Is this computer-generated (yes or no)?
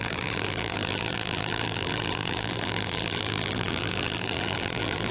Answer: yes